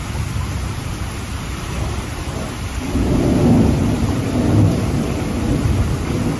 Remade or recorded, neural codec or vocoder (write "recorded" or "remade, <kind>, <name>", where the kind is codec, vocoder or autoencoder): recorded